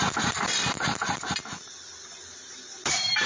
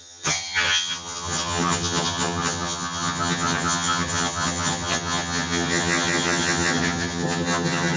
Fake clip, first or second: second